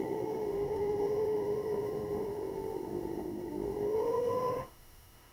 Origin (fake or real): fake